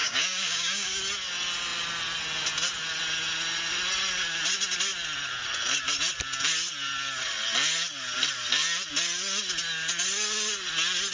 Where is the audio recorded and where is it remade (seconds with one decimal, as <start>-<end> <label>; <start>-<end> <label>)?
0.0-1.0 remade; 1.0-11.1 recorded